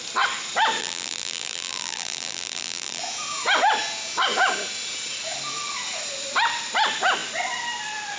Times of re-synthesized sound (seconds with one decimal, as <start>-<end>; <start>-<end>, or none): 0.8-3.0